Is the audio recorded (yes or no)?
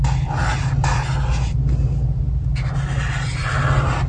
yes